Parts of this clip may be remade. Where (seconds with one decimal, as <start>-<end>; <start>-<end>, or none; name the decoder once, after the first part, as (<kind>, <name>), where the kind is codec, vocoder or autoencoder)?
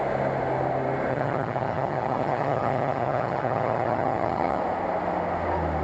1.1-4.6 (vocoder, HiFi-GAN)